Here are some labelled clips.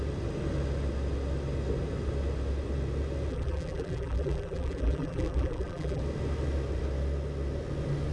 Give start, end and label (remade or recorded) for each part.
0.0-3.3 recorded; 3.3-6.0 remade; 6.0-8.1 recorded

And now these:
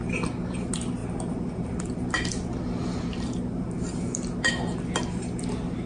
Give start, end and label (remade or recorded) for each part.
0.0-5.9 recorded